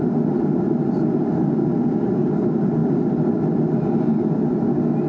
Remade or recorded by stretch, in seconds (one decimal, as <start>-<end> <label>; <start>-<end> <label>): 0.0-5.1 recorded